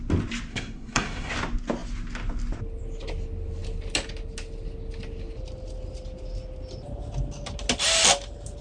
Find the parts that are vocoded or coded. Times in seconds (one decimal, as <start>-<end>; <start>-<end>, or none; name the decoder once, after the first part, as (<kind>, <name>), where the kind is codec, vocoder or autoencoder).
0.5-1.3 (codec, SNAC)